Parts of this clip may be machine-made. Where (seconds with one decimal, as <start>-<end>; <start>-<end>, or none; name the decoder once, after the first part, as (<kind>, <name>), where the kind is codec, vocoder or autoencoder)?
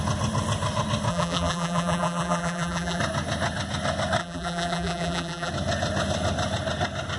1.1-3.0 (vocoder, BigVGAN v2); 4.2-5.5